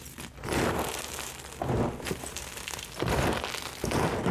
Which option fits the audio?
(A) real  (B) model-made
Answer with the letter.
A